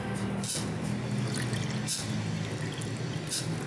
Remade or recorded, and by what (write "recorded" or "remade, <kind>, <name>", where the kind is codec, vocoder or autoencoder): recorded